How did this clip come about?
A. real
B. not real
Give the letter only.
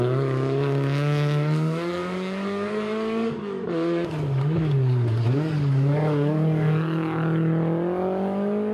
B